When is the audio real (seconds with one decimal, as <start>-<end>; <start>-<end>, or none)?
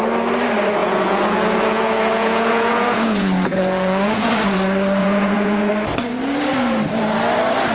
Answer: 0.0-0.8; 4.3-5.0; 5.7-7.7